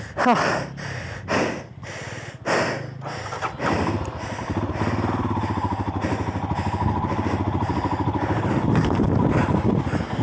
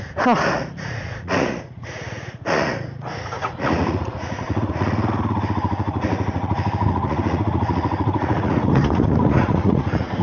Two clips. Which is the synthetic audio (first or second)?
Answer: second